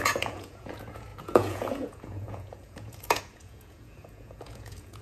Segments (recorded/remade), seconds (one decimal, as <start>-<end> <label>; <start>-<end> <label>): 0.0-5.0 remade